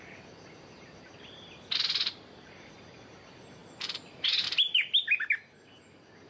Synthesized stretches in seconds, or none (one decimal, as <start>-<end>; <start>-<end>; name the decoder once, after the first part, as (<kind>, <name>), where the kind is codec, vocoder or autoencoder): 0.0-1.1 (vocoder, BigVGAN v2); 2.1-3.6